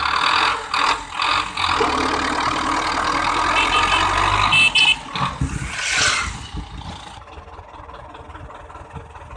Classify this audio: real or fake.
real